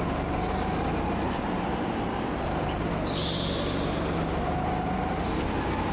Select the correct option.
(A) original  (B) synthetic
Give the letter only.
A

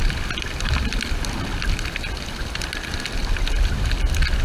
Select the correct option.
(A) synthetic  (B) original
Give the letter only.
B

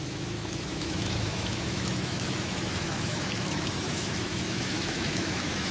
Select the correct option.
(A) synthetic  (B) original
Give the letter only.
A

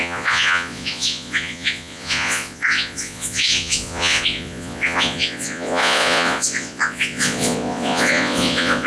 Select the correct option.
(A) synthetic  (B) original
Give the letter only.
A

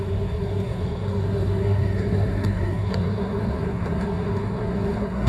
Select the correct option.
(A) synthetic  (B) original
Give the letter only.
A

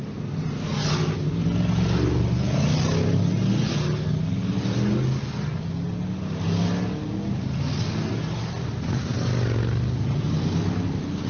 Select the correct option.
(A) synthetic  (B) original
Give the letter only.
B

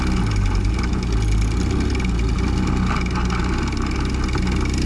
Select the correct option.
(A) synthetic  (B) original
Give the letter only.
B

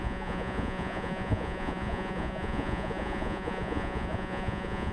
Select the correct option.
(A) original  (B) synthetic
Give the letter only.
B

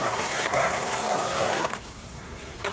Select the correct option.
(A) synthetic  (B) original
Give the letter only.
A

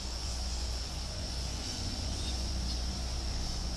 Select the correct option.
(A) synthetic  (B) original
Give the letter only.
A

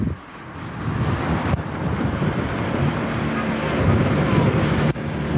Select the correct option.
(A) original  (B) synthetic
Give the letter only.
A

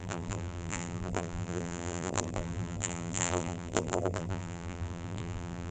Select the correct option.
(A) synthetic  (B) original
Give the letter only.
A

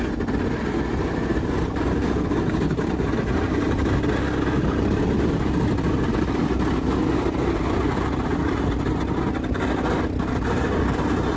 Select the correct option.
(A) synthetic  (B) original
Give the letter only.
B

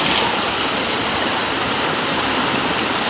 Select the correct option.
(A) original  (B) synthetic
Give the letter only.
A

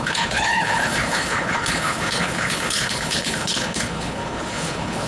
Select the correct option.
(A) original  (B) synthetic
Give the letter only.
B